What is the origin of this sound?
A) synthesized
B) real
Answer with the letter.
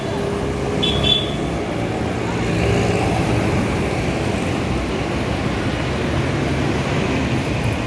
B